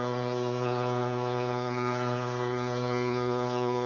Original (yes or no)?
no